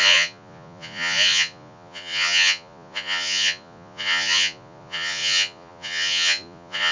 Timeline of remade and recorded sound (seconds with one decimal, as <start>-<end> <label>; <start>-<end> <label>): 0.0-6.9 remade